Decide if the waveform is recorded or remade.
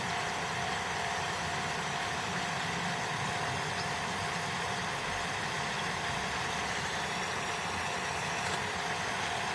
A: remade